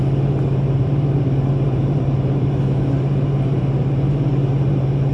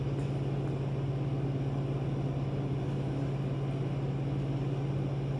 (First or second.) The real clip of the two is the second